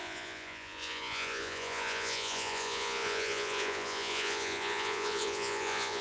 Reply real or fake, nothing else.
fake